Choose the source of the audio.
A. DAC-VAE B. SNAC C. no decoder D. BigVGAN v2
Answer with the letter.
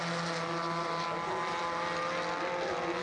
C